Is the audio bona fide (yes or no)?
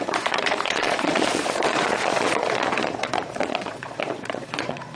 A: no